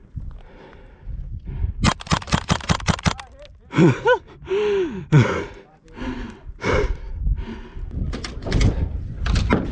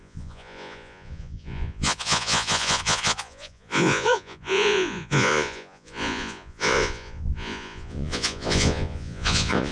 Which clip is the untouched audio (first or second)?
first